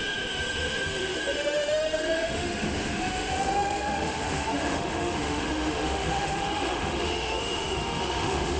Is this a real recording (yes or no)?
no